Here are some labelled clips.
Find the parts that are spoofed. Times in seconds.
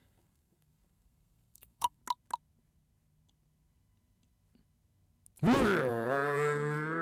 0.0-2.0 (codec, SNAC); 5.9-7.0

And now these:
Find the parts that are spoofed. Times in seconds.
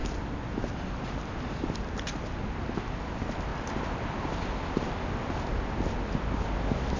0.0-2.5 (vocoder, BigVGAN v2); 3.5-4.2